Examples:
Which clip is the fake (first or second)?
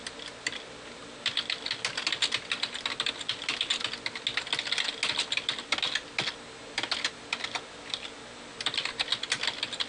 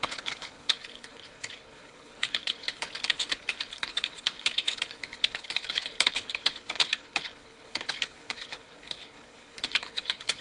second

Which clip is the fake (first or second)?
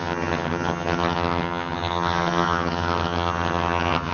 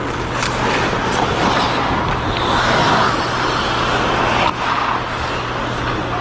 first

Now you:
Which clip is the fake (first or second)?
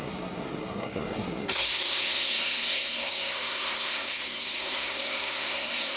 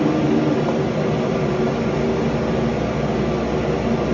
first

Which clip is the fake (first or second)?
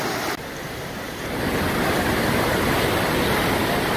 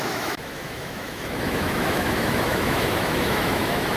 second